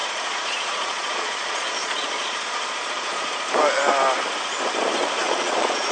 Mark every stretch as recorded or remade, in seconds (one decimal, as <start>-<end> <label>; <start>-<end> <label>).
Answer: 0.0-3.5 remade; 3.5-5.2 recorded; 5.2-5.9 remade